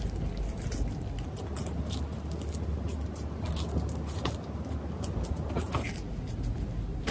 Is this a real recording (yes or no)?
yes